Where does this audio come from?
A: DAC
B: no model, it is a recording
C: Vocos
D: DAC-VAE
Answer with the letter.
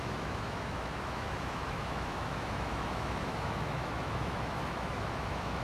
D